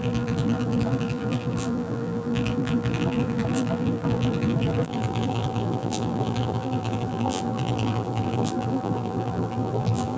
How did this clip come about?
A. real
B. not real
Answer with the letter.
B